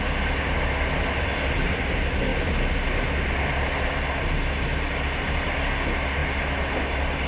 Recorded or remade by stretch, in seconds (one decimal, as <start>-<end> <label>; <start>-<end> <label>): 0.0-7.3 recorded